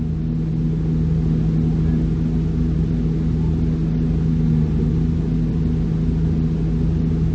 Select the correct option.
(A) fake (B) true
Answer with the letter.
B